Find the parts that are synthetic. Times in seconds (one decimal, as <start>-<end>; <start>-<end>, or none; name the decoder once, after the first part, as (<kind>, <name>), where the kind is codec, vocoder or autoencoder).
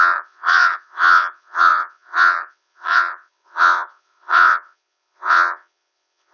0.0-6.3 (vocoder, WaveNeXt)